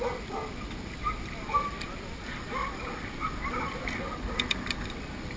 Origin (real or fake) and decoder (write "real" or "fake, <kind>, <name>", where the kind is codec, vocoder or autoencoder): real